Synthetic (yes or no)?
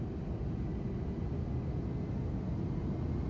no